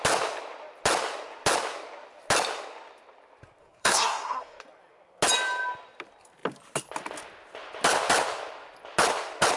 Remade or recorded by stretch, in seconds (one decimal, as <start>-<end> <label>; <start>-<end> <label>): 0.0-3.6 recorded; 3.6-4.6 remade; 4.6-9.6 recorded